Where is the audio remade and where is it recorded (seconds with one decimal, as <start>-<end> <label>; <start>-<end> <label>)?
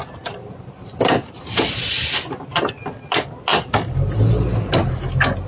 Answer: 0.0-0.4 recorded; 0.4-2.2 remade; 2.2-5.5 recorded